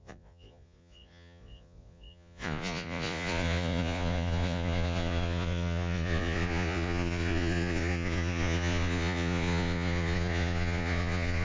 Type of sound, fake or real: fake